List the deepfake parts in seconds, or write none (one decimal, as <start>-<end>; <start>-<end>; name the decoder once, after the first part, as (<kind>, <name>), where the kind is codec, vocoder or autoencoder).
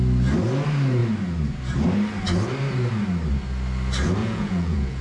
4.2-5.0 (vocoder, Vocos)